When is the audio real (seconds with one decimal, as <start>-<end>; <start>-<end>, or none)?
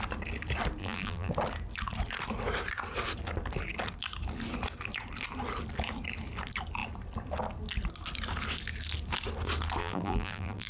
0.0-0.8; 1.3-9.8